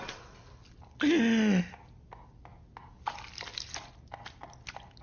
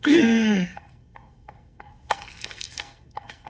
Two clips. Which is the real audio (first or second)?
first